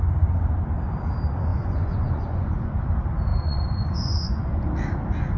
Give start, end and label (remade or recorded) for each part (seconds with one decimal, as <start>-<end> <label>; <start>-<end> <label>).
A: 0.0-1.5 recorded; 1.5-2.8 remade; 2.8-3.3 recorded; 3.3-4.7 remade; 4.7-5.4 recorded

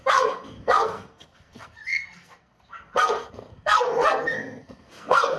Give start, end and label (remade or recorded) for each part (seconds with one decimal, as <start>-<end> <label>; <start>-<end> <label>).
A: 0.0-5.4 remade

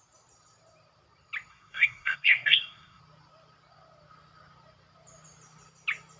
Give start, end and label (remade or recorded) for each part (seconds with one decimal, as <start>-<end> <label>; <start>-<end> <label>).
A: 0.0-1.5 recorded; 1.5-3.0 remade; 3.0-6.2 recorded

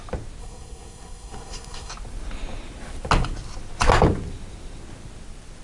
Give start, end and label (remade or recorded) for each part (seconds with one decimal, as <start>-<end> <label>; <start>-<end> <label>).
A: 0.0-0.4 recorded; 0.4-1.9 remade; 1.9-5.6 recorded

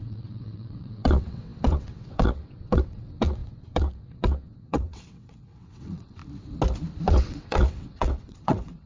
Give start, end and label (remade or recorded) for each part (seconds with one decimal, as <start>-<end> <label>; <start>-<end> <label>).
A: 0.0-6.2 remade; 6.2-7.0 recorded; 7.0-8.9 remade

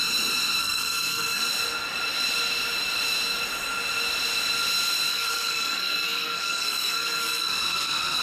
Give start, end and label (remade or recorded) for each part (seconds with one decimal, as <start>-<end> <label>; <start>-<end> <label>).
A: 0.0-0.6 recorded; 0.6-1.4 remade; 1.4-5.1 recorded; 5.1-8.2 remade

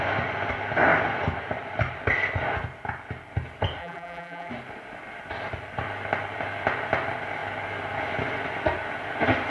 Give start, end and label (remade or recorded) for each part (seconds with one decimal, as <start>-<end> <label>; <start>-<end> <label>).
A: 0.0-3.8 recorded; 3.8-4.5 remade; 4.5-9.5 recorded

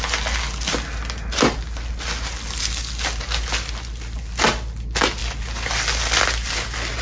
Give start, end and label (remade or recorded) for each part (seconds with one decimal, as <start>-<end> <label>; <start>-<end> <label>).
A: 0.0-7.0 recorded